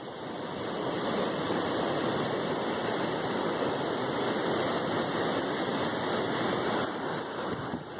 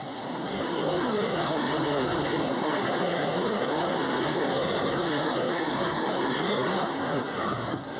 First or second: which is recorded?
first